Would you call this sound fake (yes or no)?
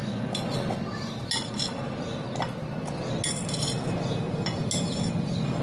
no